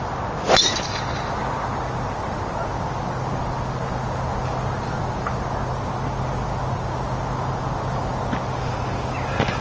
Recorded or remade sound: recorded